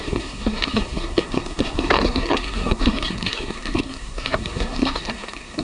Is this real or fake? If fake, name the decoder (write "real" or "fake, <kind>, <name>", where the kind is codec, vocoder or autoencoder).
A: fake, codec, SNAC